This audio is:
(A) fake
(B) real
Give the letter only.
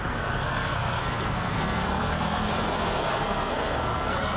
A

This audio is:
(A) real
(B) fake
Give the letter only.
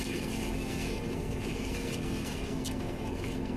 B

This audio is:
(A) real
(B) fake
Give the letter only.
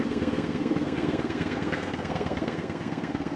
B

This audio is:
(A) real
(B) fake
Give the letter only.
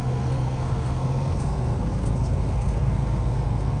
B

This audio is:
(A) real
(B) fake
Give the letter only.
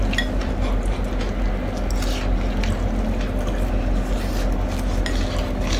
A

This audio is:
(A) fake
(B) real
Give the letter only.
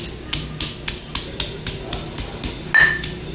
B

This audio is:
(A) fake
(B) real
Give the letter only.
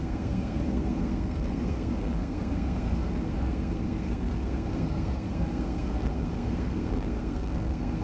A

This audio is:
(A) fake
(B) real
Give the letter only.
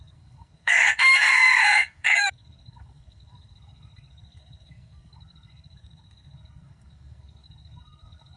A